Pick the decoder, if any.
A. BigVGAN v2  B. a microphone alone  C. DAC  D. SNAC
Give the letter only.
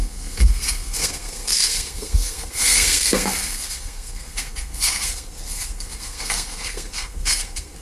D